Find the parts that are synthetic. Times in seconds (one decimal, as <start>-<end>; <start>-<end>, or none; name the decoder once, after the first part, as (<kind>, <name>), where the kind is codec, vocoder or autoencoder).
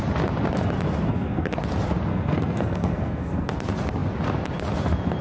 1.1-1.6 (codec, SNAC); 2.1-3.5